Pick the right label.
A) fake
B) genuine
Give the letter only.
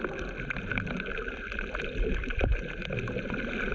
B